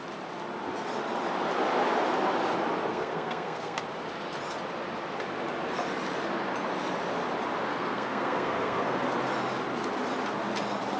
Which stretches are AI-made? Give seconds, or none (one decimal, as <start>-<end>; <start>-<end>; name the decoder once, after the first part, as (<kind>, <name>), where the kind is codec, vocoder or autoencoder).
2.9-3.8 (codec, SNAC); 7.7-9.0